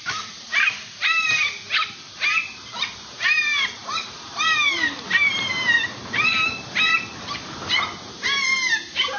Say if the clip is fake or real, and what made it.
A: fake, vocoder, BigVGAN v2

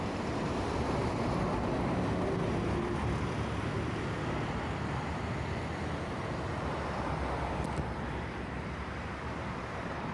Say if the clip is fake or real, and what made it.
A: fake, vocoder, BigVGAN v2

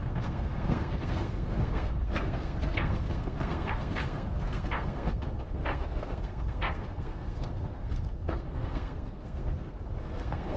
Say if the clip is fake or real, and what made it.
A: fake, codec, SNAC